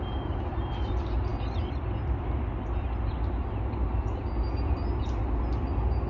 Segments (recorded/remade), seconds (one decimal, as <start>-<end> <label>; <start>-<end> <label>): 0.0-6.1 recorded

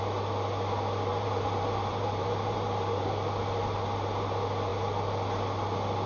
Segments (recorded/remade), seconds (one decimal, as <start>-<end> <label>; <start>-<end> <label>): 0.0-1.1 recorded; 1.1-3.1 remade; 3.1-6.1 recorded

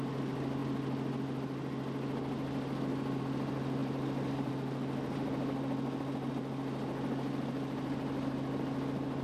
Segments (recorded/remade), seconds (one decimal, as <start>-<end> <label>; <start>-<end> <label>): 0.0-3.8 recorded; 3.8-4.5 remade; 4.5-9.2 recorded